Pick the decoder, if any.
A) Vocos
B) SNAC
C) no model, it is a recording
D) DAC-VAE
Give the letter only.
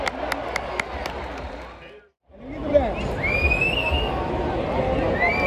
C